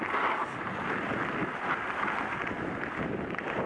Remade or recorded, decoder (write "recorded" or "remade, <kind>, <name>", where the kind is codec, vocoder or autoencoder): recorded